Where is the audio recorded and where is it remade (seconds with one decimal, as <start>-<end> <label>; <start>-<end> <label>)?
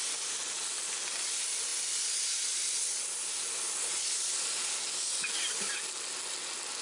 0.0-6.8 recorded